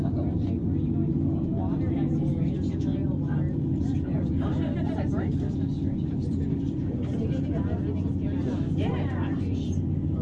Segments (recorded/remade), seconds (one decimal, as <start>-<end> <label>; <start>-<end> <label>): 0.0-10.2 recorded